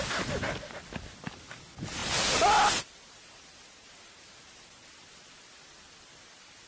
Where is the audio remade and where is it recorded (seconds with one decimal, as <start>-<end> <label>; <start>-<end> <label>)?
0.0-6.7 recorded